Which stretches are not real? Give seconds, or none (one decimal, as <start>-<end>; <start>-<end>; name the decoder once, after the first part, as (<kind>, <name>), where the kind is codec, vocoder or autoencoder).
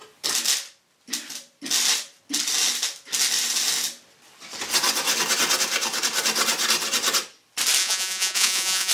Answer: 7.8-8.9 (vocoder, Vocos)